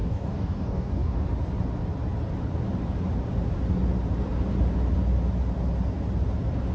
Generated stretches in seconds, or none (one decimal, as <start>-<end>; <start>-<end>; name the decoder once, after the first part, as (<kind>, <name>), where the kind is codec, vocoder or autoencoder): 0.0-1.2 (codec, DAC)